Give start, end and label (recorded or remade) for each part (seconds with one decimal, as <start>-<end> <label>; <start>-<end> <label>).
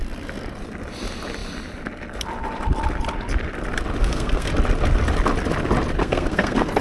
0.0-4.0 recorded; 4.0-4.5 remade; 4.5-6.0 recorded; 6.0-6.8 remade